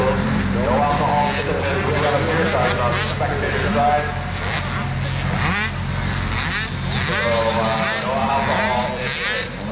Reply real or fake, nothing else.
real